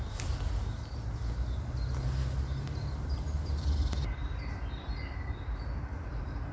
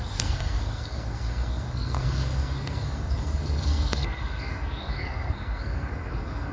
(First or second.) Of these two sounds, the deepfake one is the second